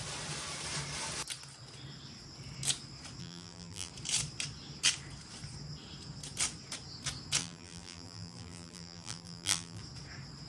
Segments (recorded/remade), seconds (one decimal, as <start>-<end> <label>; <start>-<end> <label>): 0.0-3.2 recorded; 3.2-3.9 remade; 3.9-7.4 recorded; 7.4-9.8 remade; 9.8-10.5 recorded

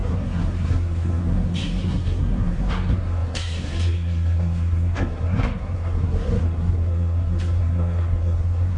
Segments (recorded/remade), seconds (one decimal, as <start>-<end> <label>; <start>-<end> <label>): 0.0-8.8 remade

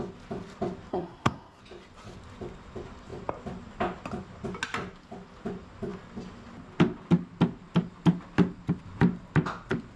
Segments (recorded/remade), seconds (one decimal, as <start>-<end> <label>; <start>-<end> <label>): 0.0-0.9 recorded; 0.9-1.6 remade; 1.6-10.0 recorded

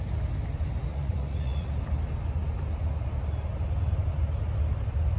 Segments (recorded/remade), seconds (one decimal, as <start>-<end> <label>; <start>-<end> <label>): 0.0-0.9 recorded; 0.9-1.7 remade; 1.7-5.2 recorded